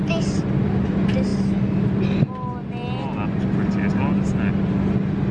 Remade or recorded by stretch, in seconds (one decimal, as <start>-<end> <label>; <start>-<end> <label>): 0.0-5.3 recorded